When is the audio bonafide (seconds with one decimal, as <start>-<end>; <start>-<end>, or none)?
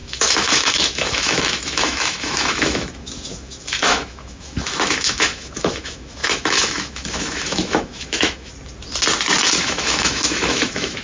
8.5-9.6